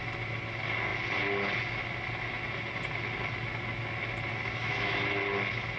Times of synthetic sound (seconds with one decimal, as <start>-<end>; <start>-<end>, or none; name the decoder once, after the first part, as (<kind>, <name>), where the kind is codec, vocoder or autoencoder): 4.6-5.2 (autoencoder, DAC-VAE)